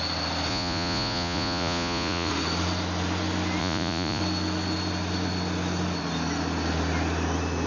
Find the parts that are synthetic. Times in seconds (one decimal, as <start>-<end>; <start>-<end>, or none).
0.5-2.3; 3.6-4.2